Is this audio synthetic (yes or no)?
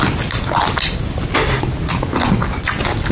no